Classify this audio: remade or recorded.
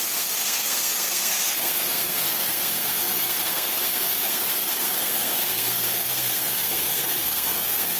remade